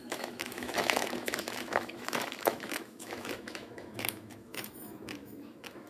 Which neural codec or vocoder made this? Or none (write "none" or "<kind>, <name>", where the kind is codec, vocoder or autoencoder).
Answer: autoencoder, DAC-VAE